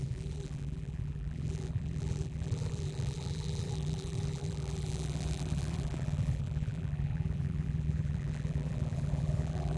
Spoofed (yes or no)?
yes